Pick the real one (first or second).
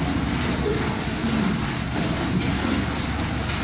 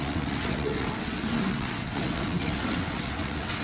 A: first